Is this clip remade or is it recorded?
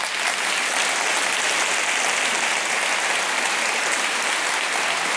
recorded